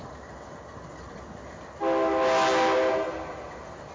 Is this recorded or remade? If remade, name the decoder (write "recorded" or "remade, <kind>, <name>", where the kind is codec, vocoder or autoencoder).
recorded